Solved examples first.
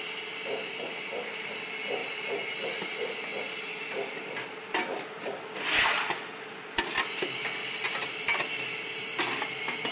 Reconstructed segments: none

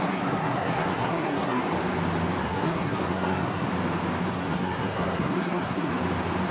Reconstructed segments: 0.0-1.6 (codec, SNAC); 2.4-3.7; 4.3-5.9

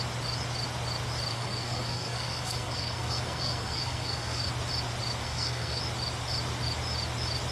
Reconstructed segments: 1.3-4.5 (codec, SNAC); 5.2-5.8

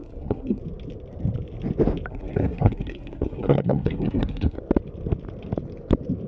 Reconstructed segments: 0.0-0.6 (codec, SNAC); 2.1-4.6

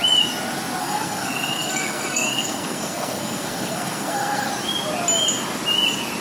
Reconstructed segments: 0.8-4.5 (codec, SNAC)